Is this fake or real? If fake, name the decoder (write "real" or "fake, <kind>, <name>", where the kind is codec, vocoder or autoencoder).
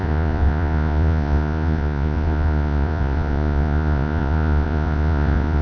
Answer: fake, vocoder, Vocos